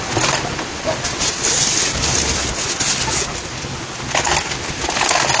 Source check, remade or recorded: recorded